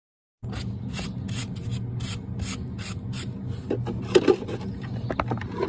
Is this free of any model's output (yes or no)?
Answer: yes